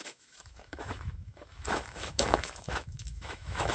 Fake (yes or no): yes